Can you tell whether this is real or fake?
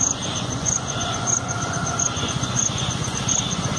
fake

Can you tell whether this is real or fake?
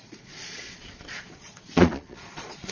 fake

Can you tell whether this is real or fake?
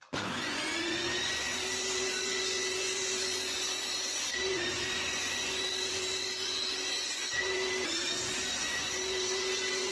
fake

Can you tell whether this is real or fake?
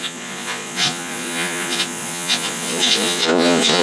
fake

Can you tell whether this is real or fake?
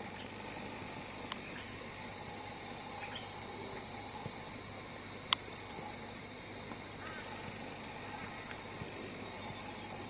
real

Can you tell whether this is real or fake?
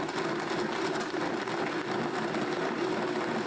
real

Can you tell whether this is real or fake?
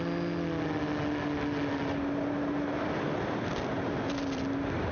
real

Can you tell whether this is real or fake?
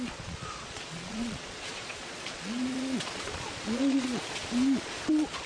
fake